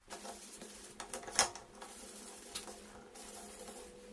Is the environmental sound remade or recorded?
recorded